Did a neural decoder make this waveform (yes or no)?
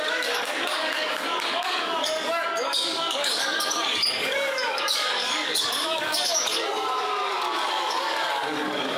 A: yes